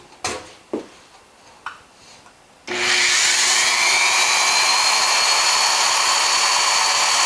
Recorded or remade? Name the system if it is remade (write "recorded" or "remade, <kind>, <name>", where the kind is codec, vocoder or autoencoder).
recorded